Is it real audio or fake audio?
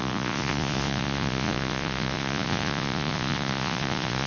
fake